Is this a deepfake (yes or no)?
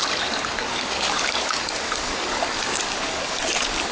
yes